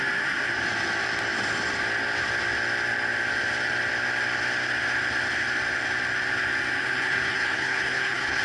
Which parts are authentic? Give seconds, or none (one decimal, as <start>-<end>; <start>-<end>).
0.0-6.8